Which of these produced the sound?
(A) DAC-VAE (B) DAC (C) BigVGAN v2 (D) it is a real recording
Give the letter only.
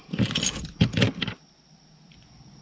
D